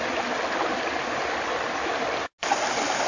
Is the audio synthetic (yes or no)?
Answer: no